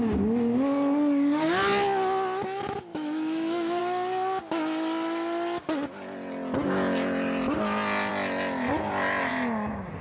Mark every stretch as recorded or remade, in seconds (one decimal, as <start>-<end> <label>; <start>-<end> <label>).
0.0-2.9 recorded; 2.9-3.8 remade; 3.8-10.0 recorded